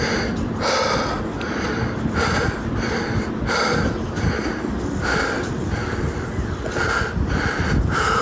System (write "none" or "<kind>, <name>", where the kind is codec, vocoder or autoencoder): vocoder, BigVGAN v2